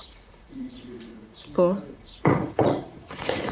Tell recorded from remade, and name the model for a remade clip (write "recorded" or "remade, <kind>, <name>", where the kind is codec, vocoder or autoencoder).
remade, vocoder, Vocos